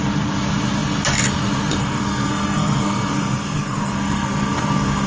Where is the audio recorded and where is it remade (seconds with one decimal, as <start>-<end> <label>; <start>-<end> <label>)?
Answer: 0.0-1.8 recorded; 1.8-5.1 remade